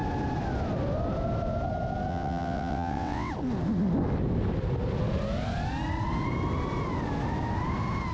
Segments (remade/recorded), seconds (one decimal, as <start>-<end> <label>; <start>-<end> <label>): 0.0-2.1 recorded; 2.1-3.3 remade; 3.3-8.1 recorded